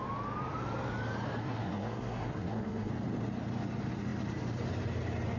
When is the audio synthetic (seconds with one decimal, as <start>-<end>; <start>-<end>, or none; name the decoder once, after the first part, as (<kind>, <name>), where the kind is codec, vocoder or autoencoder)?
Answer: 1.4-2.9 (codec, SNAC)